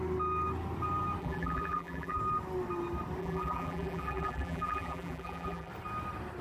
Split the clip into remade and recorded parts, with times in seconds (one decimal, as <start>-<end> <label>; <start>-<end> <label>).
0.0-1.2 recorded; 1.2-2.2 remade; 2.2-3.2 recorded; 3.2-5.7 remade; 5.7-6.4 recorded